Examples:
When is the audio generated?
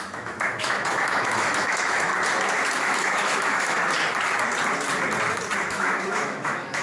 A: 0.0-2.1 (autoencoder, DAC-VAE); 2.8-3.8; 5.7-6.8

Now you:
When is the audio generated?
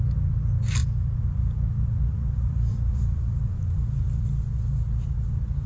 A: 0.8-4.2 (vocoder, BigVGAN v2)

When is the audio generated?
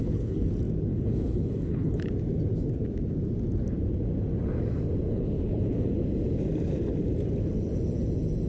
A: 0.0-0.5 (codec, HILCodec); 0.9-2.1; 5.1-5.9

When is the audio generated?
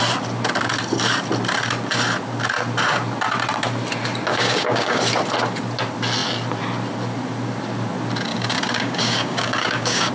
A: 4.3-5.0 (codec, DAC); 8.3-10.1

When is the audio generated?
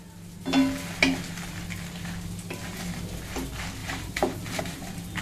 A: 3.8-4.6 (vocoder, BigVGAN v2)